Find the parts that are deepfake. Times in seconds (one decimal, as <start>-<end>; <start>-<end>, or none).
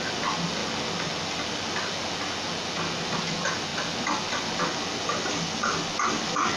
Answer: none